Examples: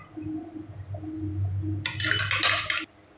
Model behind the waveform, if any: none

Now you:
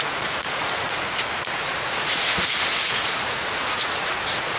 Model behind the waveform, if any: vocoder, Vocos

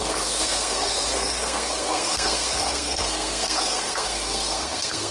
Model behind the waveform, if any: codec, SNAC